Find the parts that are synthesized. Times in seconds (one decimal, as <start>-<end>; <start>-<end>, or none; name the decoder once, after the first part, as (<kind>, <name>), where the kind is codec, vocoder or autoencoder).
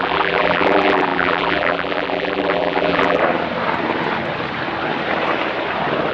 0.0-3.2 (vocoder, BigVGAN v2)